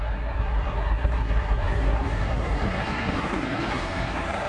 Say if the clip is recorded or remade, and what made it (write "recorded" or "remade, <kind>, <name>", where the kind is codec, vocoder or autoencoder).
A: remade, codec, SNAC